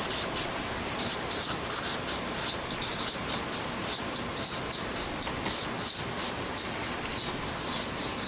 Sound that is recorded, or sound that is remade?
recorded